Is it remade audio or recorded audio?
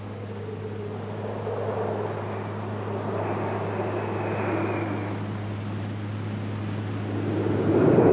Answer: recorded